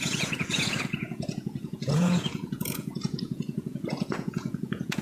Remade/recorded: remade